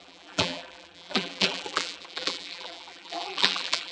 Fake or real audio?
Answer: fake